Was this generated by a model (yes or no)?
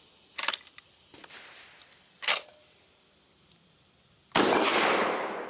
no